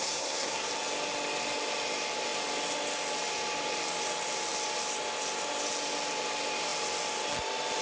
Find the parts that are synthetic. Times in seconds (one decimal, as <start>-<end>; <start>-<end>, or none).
0.0-0.7